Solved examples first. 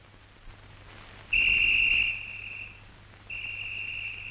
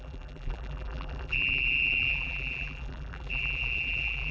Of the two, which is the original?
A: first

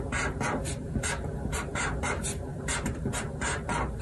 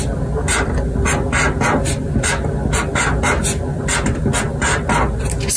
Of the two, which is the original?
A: second